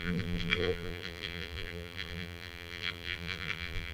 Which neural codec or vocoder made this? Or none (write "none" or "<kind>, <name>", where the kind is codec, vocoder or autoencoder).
vocoder, BigVGAN v2